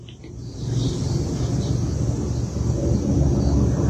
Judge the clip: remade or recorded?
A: recorded